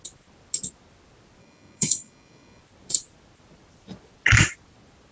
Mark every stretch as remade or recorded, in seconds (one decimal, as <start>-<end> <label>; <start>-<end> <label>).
0.0-1.4 recorded; 1.4-2.6 remade; 2.6-5.1 recorded